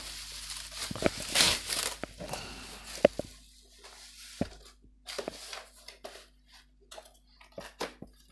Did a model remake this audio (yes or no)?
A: no